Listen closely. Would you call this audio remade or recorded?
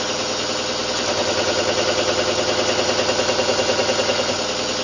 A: recorded